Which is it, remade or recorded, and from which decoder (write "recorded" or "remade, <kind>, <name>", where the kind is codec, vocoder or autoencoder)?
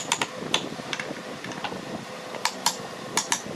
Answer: recorded